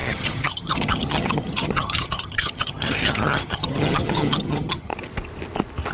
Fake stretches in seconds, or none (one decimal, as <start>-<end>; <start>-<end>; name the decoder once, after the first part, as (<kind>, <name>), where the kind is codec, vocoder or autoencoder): 0.0-4.9 (vocoder, HiFi-GAN)